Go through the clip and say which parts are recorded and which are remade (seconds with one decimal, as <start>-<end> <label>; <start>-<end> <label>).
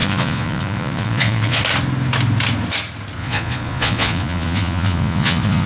0.0-1.6 remade; 1.6-3.2 recorded; 3.2-5.7 remade